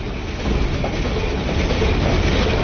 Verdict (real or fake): real